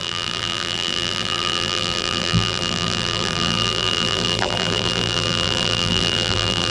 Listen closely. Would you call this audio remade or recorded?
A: remade